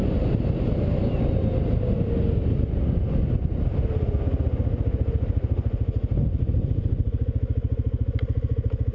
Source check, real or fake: real